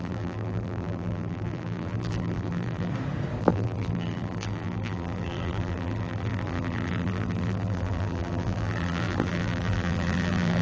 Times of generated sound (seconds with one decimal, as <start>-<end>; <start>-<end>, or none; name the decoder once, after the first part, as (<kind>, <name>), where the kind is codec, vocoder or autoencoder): 0.0-2.9 (vocoder, BigVGAN v2); 3.4-10.6